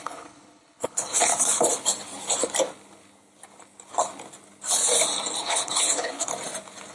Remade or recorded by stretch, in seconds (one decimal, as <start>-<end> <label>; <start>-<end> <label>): 0.0-1.3 remade; 1.3-5.4 recorded; 5.4-6.3 remade; 6.3-6.9 recorded